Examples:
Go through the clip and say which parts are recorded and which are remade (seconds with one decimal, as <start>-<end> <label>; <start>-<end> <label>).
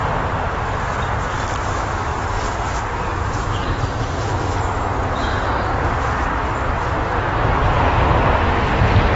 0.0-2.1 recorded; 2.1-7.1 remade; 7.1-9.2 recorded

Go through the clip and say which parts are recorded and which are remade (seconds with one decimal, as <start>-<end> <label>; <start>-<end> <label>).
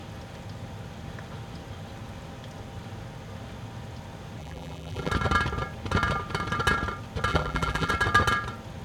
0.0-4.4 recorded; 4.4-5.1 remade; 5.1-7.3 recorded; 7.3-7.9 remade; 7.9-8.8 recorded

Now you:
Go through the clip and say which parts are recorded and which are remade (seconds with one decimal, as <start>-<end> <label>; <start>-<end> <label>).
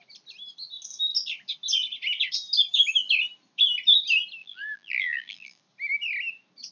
0.0-4.4 recorded; 4.4-5.6 remade; 5.6-6.7 recorded